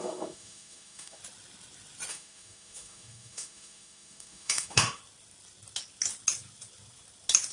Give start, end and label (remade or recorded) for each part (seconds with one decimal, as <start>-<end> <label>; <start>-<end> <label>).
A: 0.0-1.2 remade; 1.2-2.1 recorded; 2.1-5.0 remade; 5.0-7.5 recorded